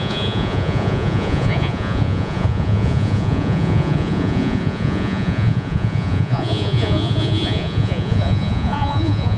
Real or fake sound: fake